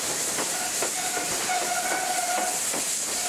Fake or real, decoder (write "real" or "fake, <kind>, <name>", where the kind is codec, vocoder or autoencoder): real